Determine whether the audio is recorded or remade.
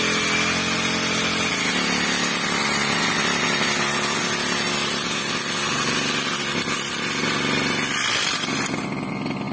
recorded